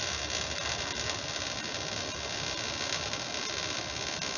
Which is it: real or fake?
real